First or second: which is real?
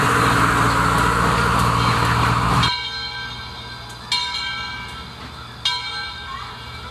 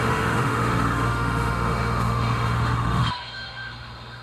first